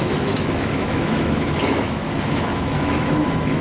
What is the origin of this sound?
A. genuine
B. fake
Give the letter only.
B